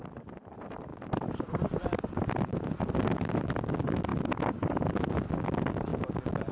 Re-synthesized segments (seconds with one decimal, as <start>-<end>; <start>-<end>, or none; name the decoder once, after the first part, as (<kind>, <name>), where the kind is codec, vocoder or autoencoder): 0.0-0.9 (vocoder, BigVGAN v2); 1.4-2.5; 3.4-4.1; 4.7-5.9